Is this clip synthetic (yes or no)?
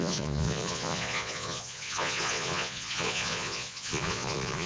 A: yes